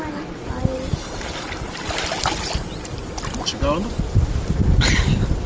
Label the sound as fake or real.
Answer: real